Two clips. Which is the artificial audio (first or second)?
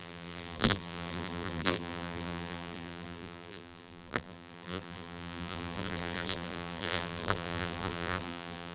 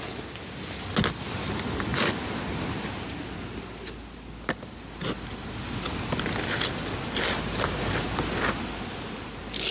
first